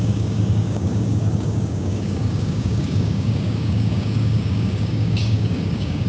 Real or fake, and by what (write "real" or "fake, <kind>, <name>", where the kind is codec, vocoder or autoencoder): fake, codec, DAC